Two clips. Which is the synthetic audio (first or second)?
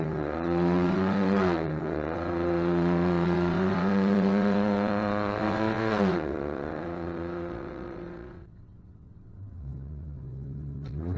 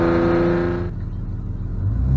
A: first